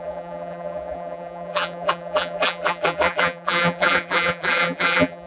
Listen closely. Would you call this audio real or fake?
fake